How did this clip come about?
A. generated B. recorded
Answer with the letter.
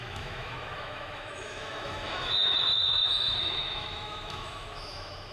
A